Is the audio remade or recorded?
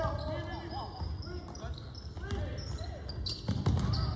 recorded